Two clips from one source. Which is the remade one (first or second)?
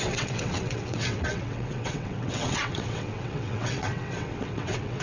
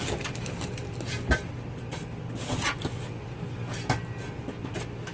first